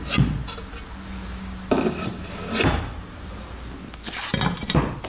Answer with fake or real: real